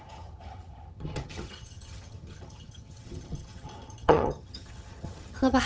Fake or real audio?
fake